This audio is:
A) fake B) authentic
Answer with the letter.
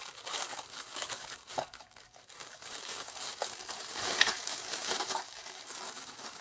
A